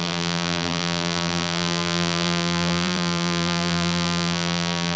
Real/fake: fake